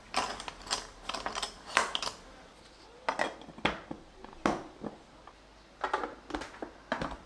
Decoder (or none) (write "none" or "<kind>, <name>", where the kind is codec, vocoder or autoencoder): none